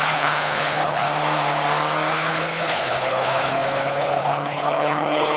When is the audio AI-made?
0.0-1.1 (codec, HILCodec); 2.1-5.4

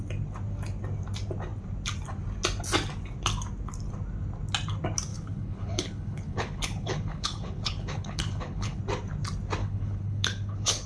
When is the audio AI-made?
5.1-8.8 (codec, HILCodec); 9.6-10.9